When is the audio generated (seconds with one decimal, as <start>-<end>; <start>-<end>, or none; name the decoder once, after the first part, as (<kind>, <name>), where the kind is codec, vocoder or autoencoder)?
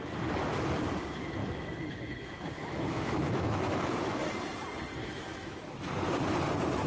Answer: 1.4-4.0 (autoencoder, DAC-VAE); 5.0-5.9